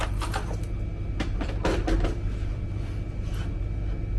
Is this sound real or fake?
real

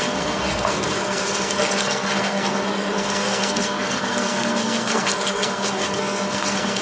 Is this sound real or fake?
fake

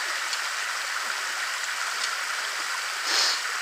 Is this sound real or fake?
real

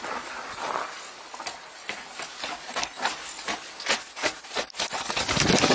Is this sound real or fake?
real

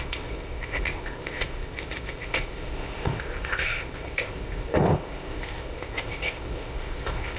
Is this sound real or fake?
fake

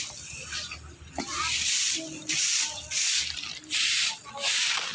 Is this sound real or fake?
real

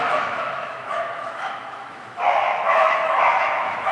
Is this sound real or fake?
fake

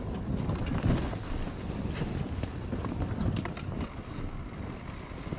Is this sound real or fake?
real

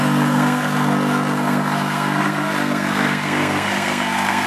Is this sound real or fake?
fake